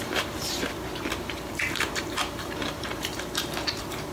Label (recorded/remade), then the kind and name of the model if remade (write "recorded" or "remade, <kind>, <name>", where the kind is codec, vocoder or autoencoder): remade, vocoder, BigVGAN v2